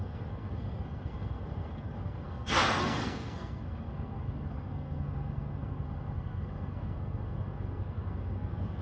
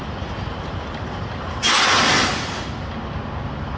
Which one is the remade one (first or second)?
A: first